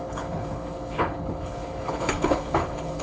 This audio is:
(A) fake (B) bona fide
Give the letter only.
A